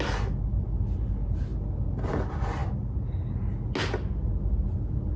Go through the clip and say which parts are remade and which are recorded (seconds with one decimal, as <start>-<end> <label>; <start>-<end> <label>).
0.0-5.2 recorded